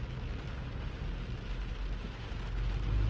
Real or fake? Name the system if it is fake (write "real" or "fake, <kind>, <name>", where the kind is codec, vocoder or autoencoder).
real